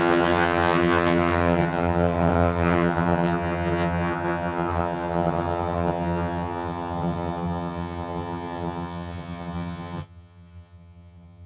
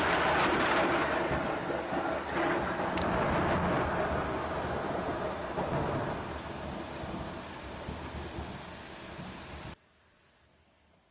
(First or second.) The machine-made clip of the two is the first